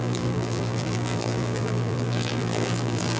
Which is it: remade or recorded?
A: remade